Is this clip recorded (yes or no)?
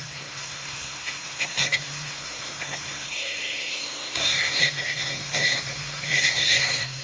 no